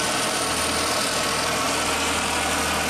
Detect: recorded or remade recorded